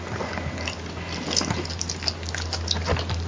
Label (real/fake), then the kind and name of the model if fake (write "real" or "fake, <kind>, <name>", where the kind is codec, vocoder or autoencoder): real